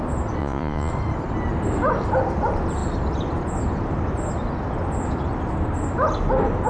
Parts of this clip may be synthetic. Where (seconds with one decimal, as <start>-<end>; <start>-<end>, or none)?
0.4-0.9